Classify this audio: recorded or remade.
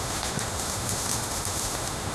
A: remade